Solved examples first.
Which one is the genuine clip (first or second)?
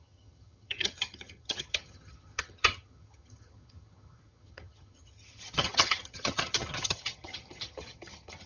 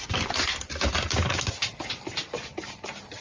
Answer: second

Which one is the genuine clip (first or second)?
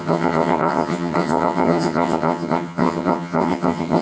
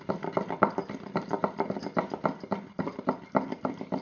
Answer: second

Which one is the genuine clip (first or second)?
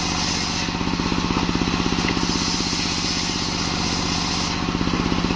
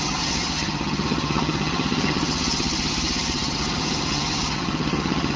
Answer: first